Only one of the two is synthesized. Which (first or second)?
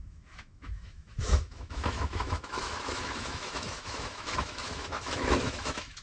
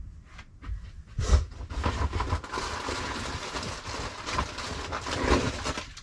first